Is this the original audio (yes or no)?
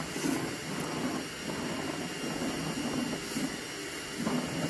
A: yes